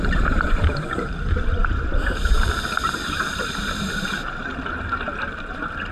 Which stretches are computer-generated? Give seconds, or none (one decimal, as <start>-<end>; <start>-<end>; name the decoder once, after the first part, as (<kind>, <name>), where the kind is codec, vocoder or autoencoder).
0.0-4.5 (vocoder, BigVGAN v2); 5.2-5.9